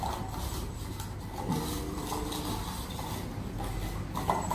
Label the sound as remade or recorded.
recorded